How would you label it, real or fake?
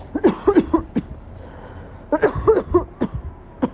real